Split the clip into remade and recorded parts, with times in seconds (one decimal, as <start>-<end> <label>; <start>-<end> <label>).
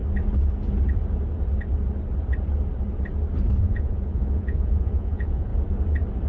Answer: 0.0-3.6 recorded; 3.6-5.5 remade; 5.5-6.3 recorded